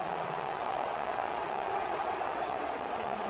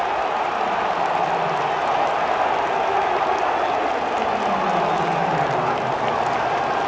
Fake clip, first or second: first